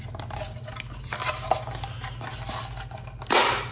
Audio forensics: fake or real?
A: real